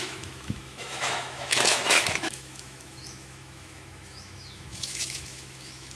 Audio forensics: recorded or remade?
remade